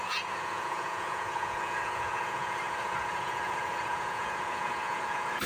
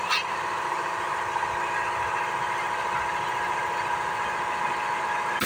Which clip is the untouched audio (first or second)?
second